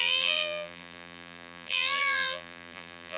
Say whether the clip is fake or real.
fake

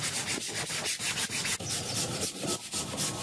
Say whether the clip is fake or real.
real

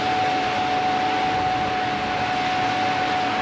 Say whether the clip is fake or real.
real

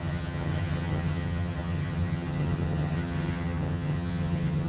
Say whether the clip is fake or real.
fake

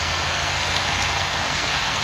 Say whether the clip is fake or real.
fake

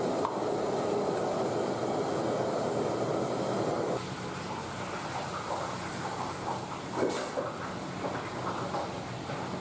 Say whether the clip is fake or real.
real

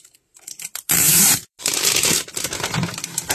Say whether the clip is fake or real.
fake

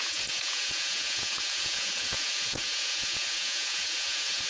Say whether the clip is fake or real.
fake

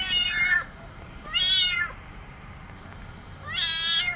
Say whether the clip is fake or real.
fake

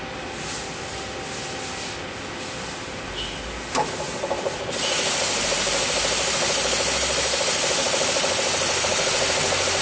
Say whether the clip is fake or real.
real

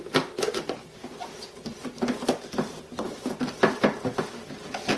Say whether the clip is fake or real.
real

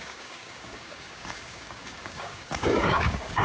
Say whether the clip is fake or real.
fake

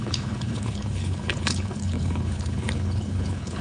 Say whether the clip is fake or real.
fake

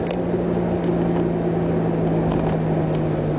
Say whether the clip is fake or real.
real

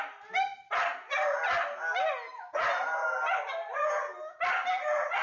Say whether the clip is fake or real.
real